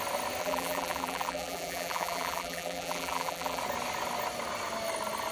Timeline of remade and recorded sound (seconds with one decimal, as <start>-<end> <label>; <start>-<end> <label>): 0.0-0.4 recorded; 0.4-3.6 remade; 3.6-5.3 recorded